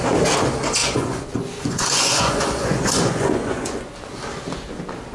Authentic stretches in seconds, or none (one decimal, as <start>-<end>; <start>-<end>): 0.0-0.8; 3.9-5.1